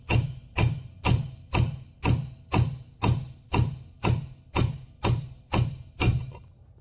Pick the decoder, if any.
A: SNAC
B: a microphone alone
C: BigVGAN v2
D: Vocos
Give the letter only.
B